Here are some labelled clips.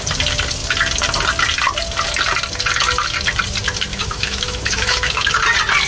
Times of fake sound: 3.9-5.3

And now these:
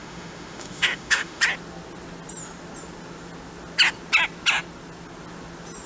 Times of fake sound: 0.0-1.4

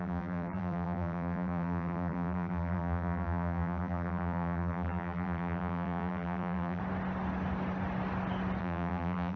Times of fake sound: 0.0-6.8; 8.6-9.4